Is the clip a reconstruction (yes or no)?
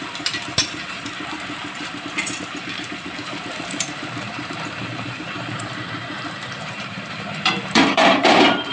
yes